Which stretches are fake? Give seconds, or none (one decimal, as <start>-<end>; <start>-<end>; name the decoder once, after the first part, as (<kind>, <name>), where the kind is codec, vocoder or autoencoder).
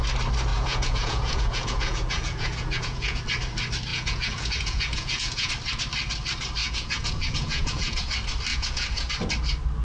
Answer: 0.5-3.2 (vocoder, Vocos); 3.9-5.5; 6.6-8.1; 8.5-9.1